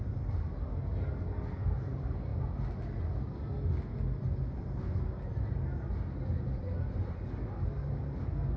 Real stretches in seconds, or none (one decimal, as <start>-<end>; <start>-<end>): 0.0-8.6